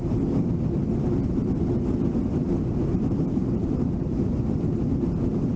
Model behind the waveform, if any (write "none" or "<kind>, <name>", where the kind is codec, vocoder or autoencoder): none